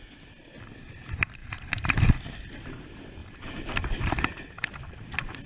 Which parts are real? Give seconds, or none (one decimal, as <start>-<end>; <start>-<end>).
0.0-1.4; 2.1-3.2; 4.1-5.5